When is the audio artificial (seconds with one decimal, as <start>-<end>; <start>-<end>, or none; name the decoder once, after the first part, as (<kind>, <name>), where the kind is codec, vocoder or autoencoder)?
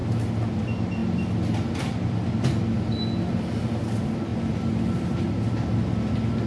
none